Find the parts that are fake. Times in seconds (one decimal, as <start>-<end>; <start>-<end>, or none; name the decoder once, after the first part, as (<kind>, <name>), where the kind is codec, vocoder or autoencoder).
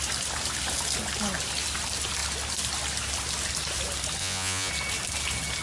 4.2-4.7 (vocoder, Vocos)